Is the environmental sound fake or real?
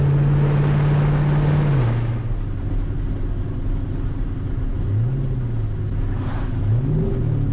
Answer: real